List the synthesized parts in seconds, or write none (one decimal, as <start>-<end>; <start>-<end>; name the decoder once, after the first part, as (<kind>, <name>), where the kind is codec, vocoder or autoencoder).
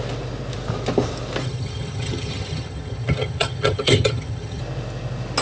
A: 1.4-4.6 (vocoder, HiFi-GAN)